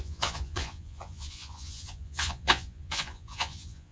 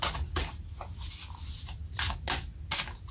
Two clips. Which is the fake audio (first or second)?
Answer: first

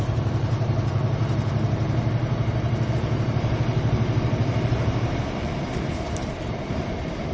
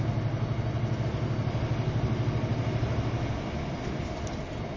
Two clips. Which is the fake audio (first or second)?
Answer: first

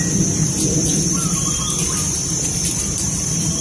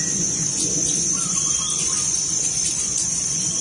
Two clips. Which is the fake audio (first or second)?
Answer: second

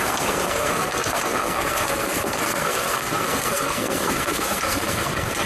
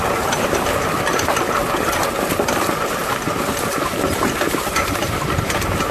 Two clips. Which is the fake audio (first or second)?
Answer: first